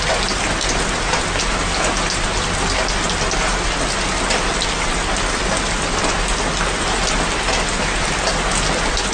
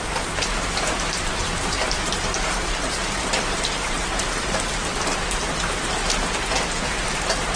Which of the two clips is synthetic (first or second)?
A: second